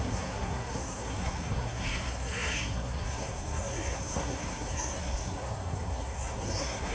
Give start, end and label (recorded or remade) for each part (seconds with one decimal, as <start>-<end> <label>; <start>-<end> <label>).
0.0-6.9 remade